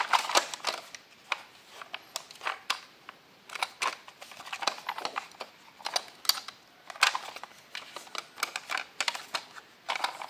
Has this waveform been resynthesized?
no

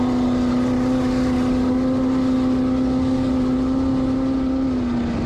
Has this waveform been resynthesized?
no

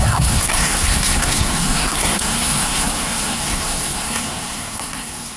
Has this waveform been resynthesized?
yes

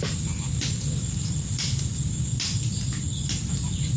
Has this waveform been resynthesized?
no